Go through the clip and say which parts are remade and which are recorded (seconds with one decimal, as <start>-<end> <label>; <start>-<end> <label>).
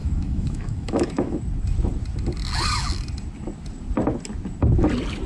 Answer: 0.0-1.4 remade; 1.4-5.3 recorded